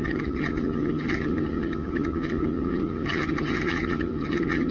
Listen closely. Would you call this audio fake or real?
fake